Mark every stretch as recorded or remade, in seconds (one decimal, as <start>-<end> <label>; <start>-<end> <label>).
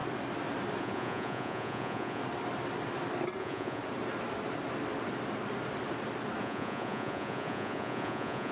0.0-0.8 recorded; 0.8-2.2 remade; 2.2-3.4 recorded; 3.4-3.8 remade; 3.8-6.4 recorded; 6.4-8.5 remade